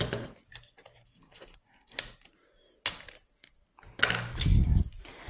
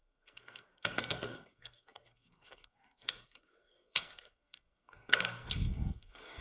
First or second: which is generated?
second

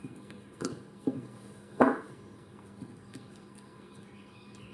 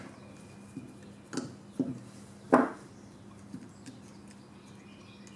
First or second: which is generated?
first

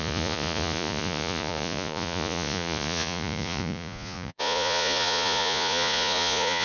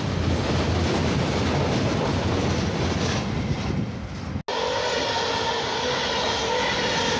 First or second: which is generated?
first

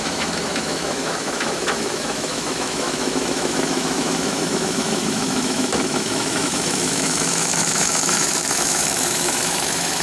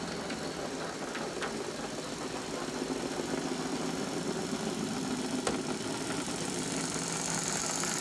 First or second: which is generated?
first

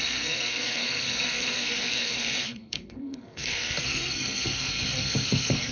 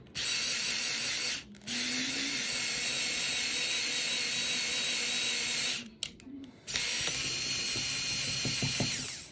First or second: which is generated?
first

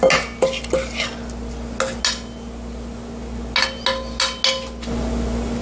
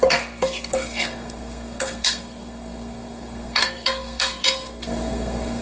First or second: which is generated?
second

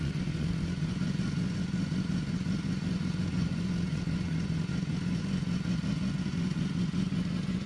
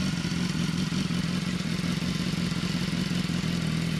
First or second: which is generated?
first